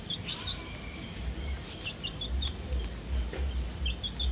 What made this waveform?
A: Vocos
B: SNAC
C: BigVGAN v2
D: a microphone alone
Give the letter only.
D